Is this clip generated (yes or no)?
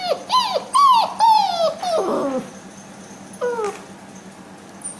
no